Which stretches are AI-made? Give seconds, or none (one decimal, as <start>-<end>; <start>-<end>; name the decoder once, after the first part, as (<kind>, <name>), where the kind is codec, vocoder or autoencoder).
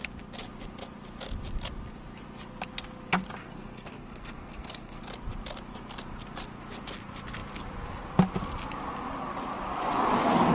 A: 3.4-5.0 (codec, SNAC)